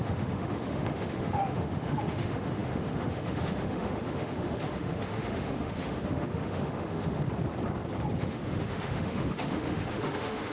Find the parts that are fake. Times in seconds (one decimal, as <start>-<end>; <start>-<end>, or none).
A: 0.0-7.2; 8.2-10.5